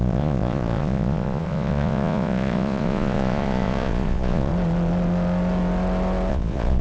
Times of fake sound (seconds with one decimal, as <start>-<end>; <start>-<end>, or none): 0.0-4.5; 6.3-6.8